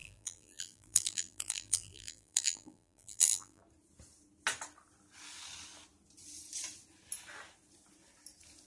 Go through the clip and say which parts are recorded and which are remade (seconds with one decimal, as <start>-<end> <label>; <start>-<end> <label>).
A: 0.0-3.6 remade; 3.6-8.7 recorded